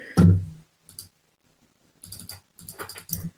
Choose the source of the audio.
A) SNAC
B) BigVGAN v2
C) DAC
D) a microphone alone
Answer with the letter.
D